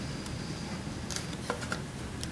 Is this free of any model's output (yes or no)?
yes